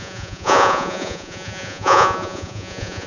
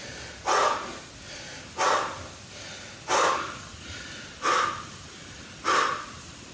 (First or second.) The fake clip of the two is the first